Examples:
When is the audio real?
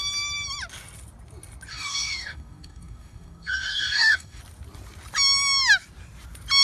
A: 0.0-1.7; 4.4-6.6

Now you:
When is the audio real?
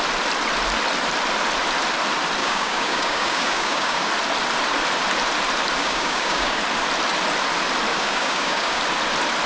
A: 0.0-2.4; 4.1-5.8; 6.6-7.9; 8.8-9.5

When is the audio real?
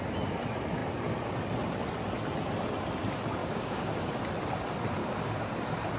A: 0.0-3.4; 4.1-5.0; 5.5-6.0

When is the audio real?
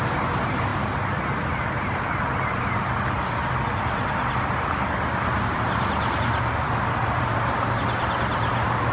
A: 0.0-8.9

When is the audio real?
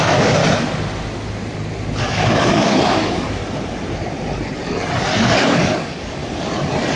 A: 0.4-2.0; 3.4-5.1; 6.2-7.0